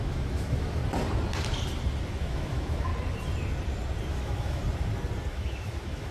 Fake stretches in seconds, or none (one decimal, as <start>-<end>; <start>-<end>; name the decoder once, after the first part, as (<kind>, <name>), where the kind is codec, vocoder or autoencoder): 0.0-0.8 (autoencoder, DAC-VAE); 2.2-2.9; 4.1-4.6; 5.3-6.1